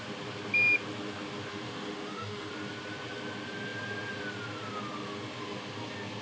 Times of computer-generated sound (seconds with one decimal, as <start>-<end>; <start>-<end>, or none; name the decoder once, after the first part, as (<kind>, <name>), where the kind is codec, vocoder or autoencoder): 1.5-2.5 (autoencoder, DAC-VAE)